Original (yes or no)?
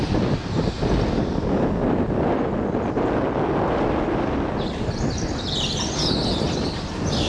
yes